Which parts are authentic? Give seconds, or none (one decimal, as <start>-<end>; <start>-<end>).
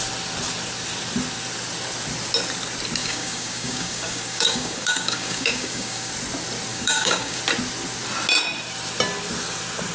0.0-3.0; 6.1-6.7; 7.4-9.9